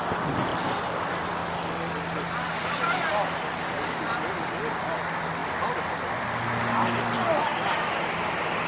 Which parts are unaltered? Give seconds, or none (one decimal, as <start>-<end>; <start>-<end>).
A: 0.0-0.5; 4.7-5.4; 5.9-8.7